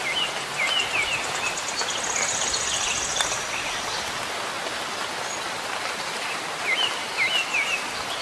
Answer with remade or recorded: recorded